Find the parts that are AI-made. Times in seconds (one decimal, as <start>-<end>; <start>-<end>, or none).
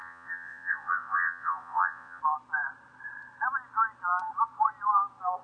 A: 0.0-2.2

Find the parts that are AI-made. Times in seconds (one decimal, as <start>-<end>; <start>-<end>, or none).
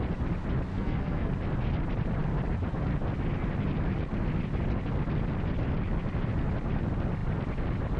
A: 0.7-1.3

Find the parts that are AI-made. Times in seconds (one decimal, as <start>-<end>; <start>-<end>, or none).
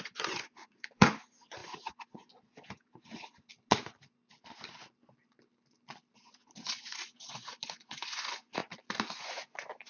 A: 0.0-3.5; 6.2-8.6; 9.2-9.9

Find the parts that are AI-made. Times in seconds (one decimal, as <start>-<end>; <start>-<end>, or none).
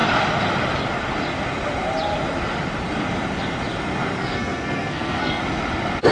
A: 4.2-5.4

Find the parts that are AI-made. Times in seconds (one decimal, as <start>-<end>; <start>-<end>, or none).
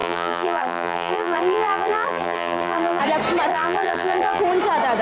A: 0.0-3.0; 3.5-4.4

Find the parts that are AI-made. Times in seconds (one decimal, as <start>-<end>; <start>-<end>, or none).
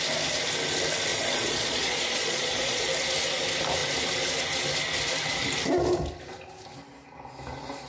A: 1.1-2.9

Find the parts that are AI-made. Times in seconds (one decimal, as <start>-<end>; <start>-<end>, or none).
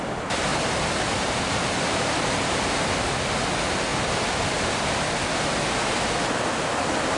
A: none